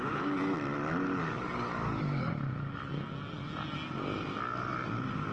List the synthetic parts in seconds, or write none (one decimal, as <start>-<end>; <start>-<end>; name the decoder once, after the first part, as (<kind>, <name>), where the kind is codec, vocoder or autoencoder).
1.2-2.3 (codec, DAC)